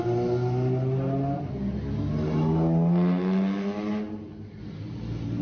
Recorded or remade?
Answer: recorded